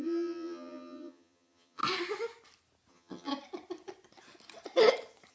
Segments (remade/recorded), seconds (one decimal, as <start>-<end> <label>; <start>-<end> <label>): 0.0-1.8 remade; 1.8-2.9 recorded; 2.9-3.3 remade; 3.3-5.3 recorded